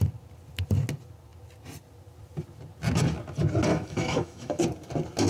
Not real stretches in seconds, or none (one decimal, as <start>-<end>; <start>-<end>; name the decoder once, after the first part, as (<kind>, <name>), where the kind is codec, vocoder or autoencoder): 3.7-4.6 (autoencoder, DAC-VAE)